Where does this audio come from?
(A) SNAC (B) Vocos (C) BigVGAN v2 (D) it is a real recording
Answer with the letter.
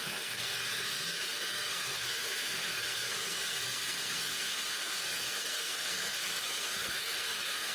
A